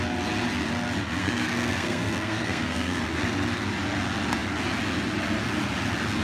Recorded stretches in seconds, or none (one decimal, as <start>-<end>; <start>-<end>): 0.0-1.2; 3.0-6.2